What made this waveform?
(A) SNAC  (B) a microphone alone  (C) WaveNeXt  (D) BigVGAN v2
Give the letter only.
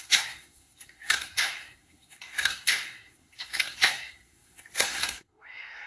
A